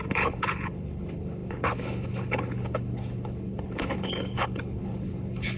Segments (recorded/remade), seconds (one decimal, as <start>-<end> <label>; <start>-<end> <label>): 0.0-5.6 remade